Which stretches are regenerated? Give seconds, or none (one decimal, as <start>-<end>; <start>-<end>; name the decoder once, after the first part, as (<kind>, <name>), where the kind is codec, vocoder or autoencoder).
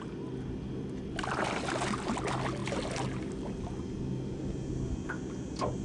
none